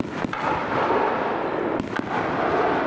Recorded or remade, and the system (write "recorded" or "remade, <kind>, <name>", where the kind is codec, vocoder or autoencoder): recorded